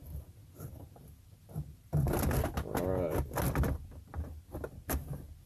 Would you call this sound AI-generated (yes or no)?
no